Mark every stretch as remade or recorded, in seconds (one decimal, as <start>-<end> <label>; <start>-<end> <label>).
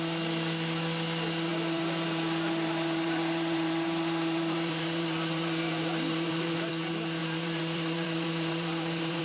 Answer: 0.0-1.5 recorded; 1.5-6.7 remade; 6.7-7.2 recorded; 7.2-9.2 remade